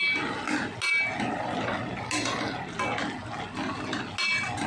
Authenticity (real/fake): real